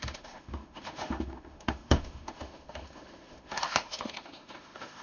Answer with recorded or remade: remade